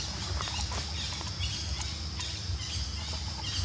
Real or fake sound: real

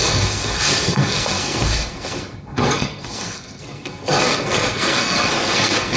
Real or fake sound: fake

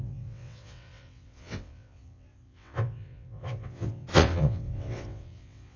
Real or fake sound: fake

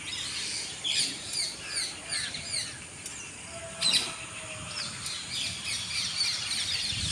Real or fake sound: real